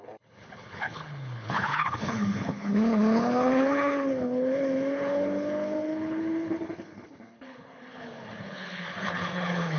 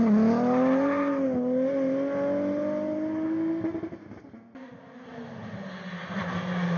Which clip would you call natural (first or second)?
second